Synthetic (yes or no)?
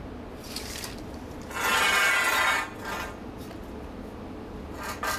no